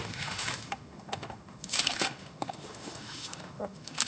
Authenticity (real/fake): fake